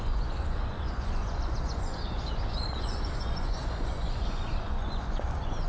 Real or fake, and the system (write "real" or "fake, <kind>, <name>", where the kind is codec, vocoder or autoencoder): fake, vocoder, Vocos